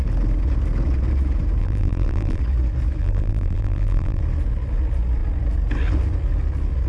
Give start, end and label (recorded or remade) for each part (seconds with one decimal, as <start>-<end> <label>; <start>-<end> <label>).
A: 0.0-1.6 recorded; 1.6-2.4 remade; 2.4-3.0 recorded; 3.0-4.2 remade; 4.2-6.9 recorded